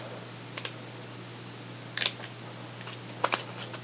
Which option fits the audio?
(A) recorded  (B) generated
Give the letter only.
A